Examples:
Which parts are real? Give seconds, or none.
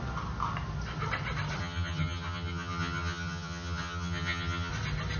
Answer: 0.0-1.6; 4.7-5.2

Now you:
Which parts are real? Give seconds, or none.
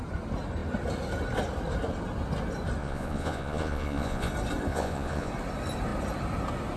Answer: 0.0-2.8; 4.3-4.7; 5.3-6.8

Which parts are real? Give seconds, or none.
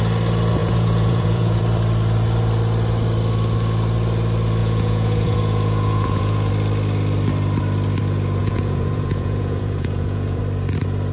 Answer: 0.0-0.6; 1.6-4.6; 6.5-8.4; 10.4-11.1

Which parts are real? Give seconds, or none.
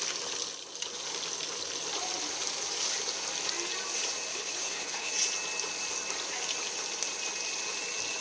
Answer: 0.0-4.3; 5.1-8.2